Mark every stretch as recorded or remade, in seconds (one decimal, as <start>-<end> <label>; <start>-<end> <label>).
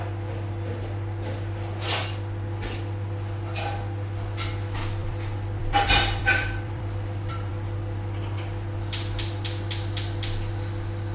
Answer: 0.0-5.0 recorded; 5.0-7.5 remade; 7.5-11.1 recorded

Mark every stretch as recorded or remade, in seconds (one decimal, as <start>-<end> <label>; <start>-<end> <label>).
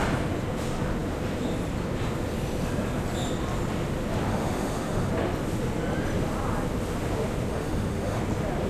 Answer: 0.0-4.3 recorded; 4.3-5.1 remade; 5.1-7.5 recorded; 7.5-8.2 remade; 8.2-8.7 recorded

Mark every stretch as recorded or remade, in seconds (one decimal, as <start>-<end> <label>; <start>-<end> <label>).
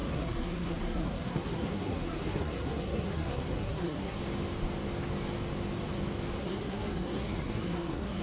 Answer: 0.0-4.2 remade; 4.2-6.4 recorded; 6.4-8.2 remade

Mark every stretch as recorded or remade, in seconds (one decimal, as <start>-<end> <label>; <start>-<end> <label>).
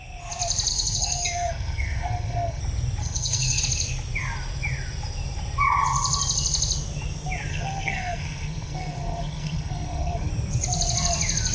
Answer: 0.0-0.7 recorded; 0.7-2.6 remade; 2.6-3.0 recorded; 3.0-3.6 remade; 3.6-7.5 recorded; 7.5-10.3 remade; 10.3-11.5 recorded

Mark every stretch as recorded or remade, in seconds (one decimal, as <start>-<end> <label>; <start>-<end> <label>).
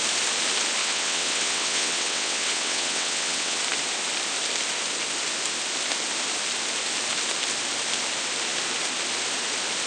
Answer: 0.0-0.8 recorded; 0.8-3.6 remade; 3.6-9.9 recorded